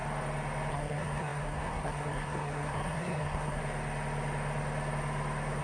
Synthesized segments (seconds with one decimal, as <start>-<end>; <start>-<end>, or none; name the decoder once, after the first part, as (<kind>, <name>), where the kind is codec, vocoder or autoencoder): 0.7-3.6 (codec, SNAC)